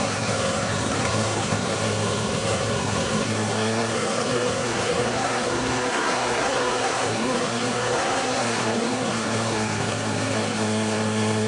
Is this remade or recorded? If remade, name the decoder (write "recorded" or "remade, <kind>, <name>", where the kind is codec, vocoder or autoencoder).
remade, codec, SNAC